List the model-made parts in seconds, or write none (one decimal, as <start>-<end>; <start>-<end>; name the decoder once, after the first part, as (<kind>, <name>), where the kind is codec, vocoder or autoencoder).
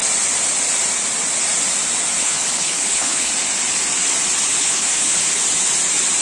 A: 2.2-3.3 (codec, HILCodec); 4.5-5.4